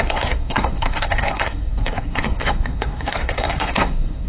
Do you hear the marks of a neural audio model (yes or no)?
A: yes